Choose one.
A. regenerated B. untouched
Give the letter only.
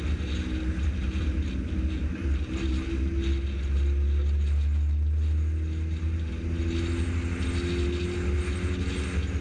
B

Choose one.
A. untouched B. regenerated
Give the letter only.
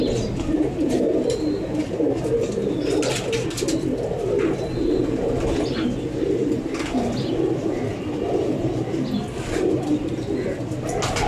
A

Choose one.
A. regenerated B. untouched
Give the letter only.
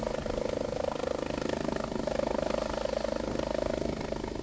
B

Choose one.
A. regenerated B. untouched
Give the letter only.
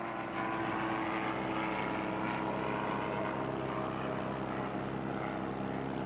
B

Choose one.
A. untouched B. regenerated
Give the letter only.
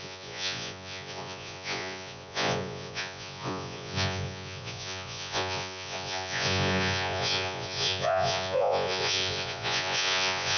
B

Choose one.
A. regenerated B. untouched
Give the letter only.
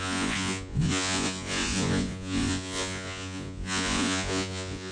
A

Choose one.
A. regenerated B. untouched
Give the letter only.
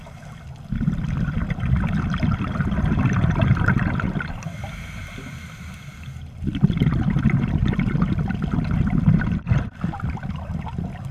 B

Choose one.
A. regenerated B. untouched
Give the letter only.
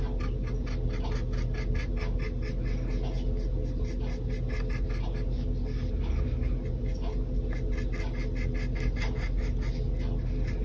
B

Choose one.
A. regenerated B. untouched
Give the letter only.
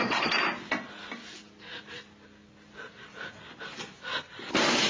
B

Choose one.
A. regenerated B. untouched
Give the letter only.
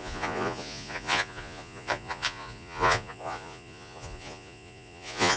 A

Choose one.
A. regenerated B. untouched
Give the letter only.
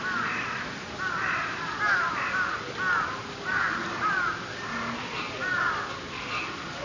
B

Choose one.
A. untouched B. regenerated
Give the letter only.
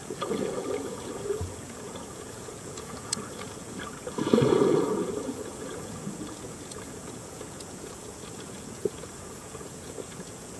B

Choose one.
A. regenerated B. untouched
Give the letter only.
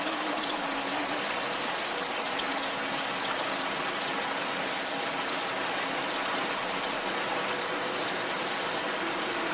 B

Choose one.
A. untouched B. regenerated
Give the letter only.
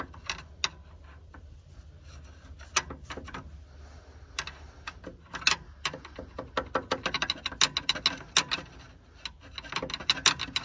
A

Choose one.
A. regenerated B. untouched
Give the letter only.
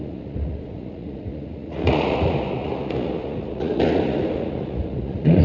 A